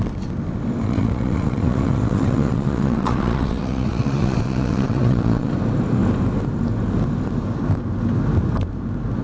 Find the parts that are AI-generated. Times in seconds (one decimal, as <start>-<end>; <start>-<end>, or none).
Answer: 0.8-5.5